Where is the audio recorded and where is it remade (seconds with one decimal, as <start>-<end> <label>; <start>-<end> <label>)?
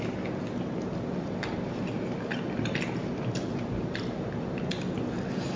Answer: 0.0-5.6 recorded